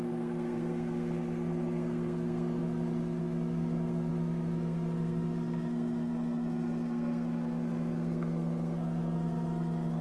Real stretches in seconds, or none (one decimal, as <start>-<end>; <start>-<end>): none